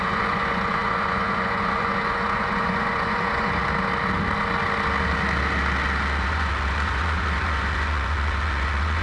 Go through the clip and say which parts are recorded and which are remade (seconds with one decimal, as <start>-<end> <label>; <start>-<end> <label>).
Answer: 0.0-3.6 remade; 3.6-6.2 recorded; 6.2-9.0 remade